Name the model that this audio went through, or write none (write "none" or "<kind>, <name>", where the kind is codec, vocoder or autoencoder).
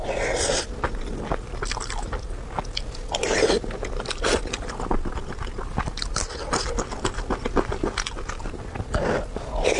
none